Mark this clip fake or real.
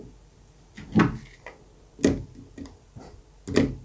real